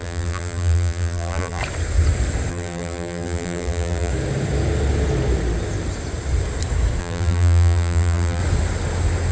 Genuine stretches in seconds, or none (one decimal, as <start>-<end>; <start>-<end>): 1.6-2.5; 4.1-7.0; 8.4-9.3